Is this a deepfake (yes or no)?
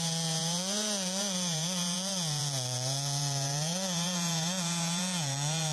yes